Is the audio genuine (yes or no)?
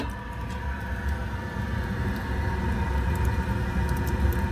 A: yes